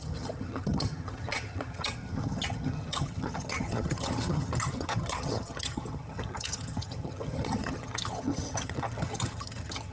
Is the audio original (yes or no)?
no